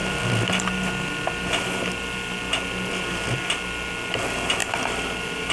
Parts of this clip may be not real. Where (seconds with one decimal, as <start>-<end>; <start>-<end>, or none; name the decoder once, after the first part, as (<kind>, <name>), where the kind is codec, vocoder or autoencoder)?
none